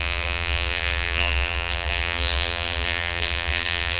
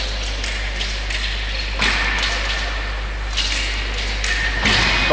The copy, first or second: first